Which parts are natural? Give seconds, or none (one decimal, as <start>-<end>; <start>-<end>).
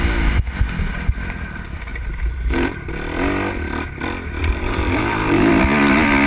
0.0-1.9; 2.9-4.4; 5.5-6.3